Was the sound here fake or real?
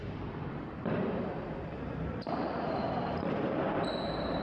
fake